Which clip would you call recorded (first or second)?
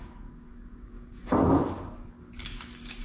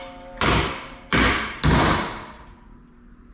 second